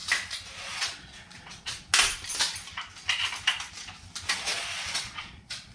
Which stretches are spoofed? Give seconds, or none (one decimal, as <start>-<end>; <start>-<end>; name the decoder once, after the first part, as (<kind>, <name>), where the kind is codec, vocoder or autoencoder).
0.6-1.9 (vocoder, Vocos); 4.3-5.7